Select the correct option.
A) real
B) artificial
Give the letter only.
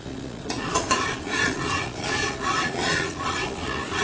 B